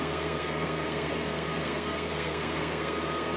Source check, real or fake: fake